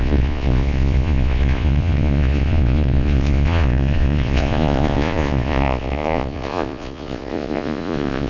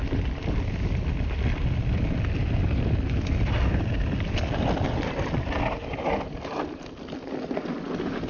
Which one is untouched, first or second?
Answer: second